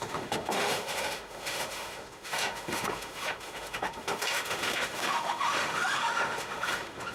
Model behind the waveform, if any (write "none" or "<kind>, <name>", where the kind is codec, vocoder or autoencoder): autoencoder, DAC-VAE